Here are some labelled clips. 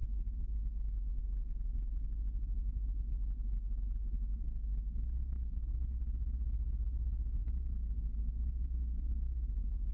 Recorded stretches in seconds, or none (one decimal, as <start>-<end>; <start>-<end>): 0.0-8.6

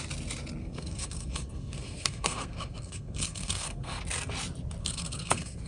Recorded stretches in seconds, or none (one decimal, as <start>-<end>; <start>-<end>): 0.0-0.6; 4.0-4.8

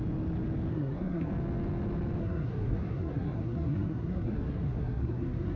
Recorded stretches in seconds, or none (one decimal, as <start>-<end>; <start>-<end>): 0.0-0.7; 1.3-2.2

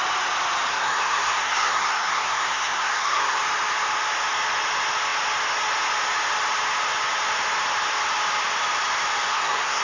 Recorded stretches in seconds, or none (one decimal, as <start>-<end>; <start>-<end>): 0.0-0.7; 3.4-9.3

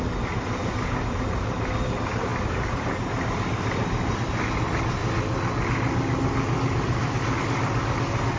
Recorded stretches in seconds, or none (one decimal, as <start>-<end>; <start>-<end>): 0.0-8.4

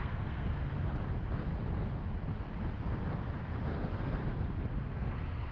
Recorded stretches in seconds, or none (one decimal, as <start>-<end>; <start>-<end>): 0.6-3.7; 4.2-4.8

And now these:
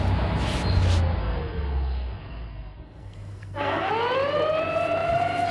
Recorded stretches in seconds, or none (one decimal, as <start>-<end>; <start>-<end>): 0.0-1.2; 3.9-5.5

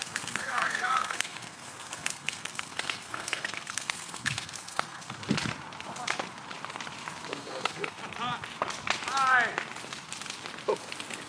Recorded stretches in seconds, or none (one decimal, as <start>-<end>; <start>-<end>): 5.2-7.3; 8.0-11.3